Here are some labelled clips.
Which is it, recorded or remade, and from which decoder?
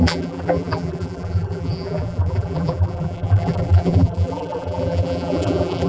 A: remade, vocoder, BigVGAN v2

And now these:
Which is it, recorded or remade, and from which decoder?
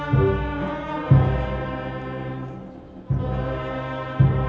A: recorded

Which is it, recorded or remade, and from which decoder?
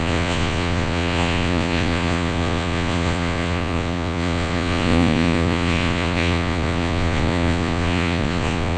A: remade, vocoder, Vocos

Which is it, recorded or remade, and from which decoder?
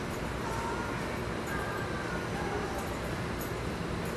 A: recorded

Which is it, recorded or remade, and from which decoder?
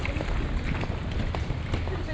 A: recorded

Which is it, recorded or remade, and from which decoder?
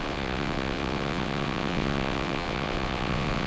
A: remade, vocoder, WaveNeXt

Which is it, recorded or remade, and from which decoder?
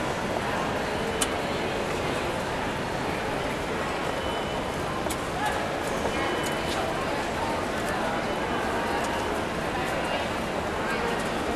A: recorded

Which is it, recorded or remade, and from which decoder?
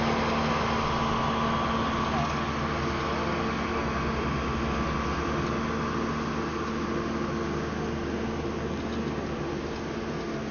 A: recorded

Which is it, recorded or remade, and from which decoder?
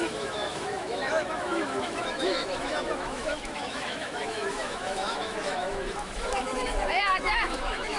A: remade, autoencoder, DAC-VAE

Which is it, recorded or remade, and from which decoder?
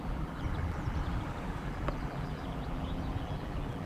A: remade, vocoder, BigVGAN v2